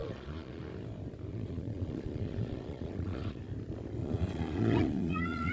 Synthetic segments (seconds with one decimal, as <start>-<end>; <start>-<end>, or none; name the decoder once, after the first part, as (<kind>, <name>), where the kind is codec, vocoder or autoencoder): 0.0-0.6 (vocoder, Vocos); 1.3-3.4; 4.0-5.5